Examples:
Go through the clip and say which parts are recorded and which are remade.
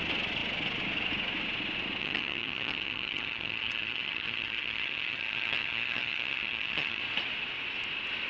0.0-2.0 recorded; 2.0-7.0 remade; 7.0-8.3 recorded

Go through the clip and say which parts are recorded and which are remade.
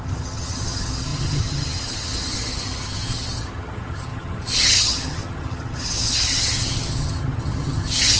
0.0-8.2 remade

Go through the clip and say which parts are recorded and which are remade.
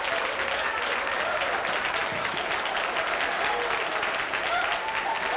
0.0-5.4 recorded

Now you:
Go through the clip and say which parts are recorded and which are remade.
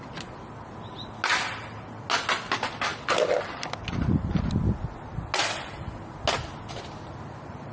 0.0-7.7 recorded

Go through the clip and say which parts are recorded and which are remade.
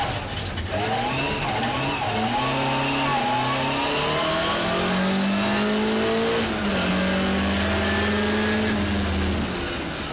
0.0-10.1 recorded